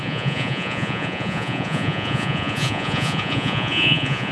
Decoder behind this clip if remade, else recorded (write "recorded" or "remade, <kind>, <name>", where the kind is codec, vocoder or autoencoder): remade, vocoder, Vocos